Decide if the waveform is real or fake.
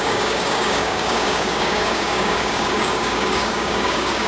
fake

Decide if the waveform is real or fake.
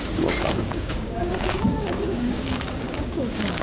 fake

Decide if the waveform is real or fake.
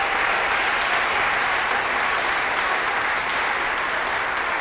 real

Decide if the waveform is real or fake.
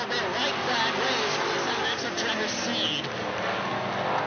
real